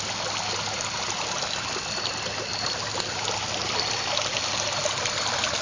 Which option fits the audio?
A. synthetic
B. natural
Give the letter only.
B